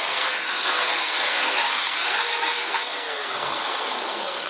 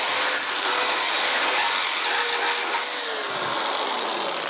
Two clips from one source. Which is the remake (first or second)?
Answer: first